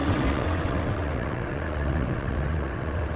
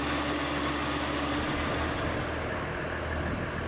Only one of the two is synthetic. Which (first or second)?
first